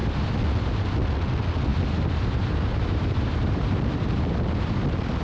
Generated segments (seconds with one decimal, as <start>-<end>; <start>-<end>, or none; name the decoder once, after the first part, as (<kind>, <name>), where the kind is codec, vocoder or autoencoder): 1.7-4.8 (vocoder, BigVGAN v2)